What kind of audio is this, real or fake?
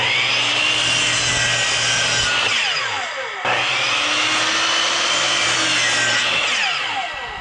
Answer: real